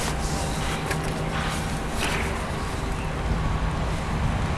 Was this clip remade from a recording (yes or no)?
no